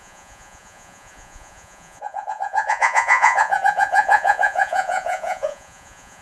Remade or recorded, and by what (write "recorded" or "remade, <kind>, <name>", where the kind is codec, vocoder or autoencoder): remade, vocoder, Vocos